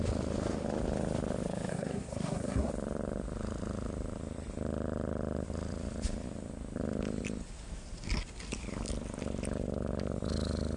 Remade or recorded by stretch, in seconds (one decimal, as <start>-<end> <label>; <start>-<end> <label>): 0.0-1.7 recorded; 1.7-2.7 remade; 2.7-10.8 recorded